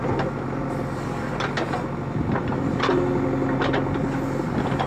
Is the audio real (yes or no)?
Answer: yes